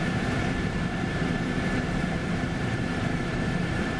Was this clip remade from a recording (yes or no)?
yes